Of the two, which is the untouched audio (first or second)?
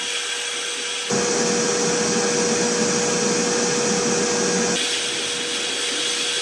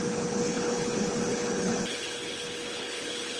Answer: first